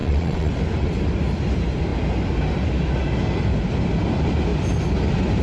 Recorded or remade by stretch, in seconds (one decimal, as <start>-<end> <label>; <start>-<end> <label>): 0.0-0.5 remade; 0.5-5.4 recorded